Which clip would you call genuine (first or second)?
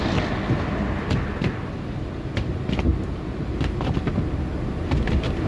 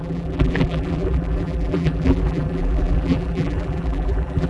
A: first